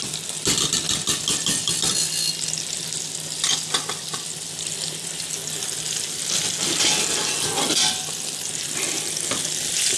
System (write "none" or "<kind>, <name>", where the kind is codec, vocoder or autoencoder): none